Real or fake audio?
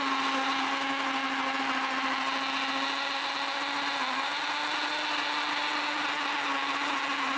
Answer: real